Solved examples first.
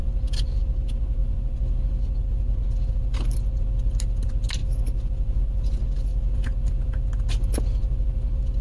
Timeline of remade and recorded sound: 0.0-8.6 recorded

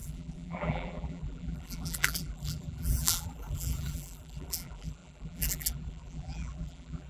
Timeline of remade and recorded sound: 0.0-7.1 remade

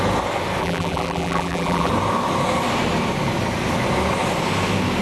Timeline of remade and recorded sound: 0.0-0.6 recorded; 0.6-1.9 remade; 1.9-5.0 recorded

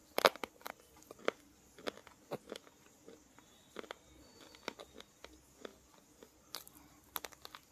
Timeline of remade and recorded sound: 0.0-0.7 remade; 0.7-2.0 recorded; 2.0-2.7 remade; 2.7-7.7 recorded

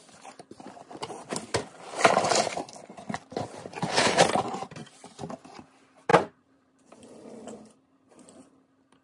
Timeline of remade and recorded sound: 0.0-6.1 recorded; 6.1-7.0 remade; 7.0-9.0 recorded

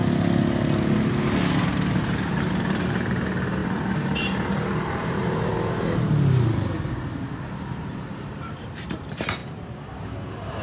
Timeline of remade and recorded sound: 0.0-2.5 recorded; 2.5-5.5 remade; 5.5-7.7 recorded; 7.7-10.6 remade

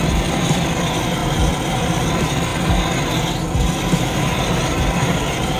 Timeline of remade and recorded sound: 0.0-2.5 remade; 2.5-3.8 recorded; 3.8-5.6 remade